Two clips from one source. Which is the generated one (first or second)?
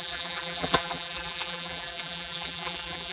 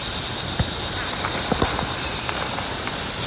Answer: first